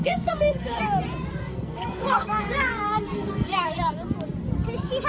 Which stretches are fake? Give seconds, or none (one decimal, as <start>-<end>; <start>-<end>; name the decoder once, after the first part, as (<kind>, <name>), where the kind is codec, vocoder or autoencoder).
0.0-0.8 (codec, SNAC); 1.4-3.9